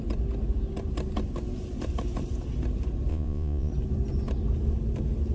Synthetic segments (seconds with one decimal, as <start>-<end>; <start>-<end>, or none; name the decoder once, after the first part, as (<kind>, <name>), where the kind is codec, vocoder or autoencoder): 3.1-3.7 (vocoder, Vocos)